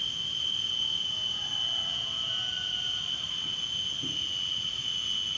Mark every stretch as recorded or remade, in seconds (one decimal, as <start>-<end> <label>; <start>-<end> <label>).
0.0-5.4 recorded